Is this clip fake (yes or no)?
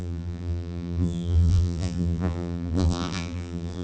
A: yes